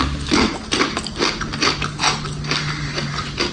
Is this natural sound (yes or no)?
yes